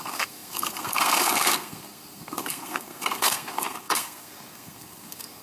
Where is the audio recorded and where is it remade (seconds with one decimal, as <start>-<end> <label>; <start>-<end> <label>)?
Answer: 0.0-5.4 remade